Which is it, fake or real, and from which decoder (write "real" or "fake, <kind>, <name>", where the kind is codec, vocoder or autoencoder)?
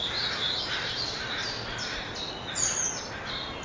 real